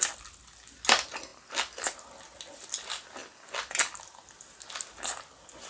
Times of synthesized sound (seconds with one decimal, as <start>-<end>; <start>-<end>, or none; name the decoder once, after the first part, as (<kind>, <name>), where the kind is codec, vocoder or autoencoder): none